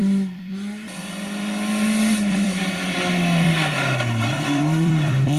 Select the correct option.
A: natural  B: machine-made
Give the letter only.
B